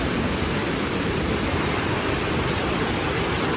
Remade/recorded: remade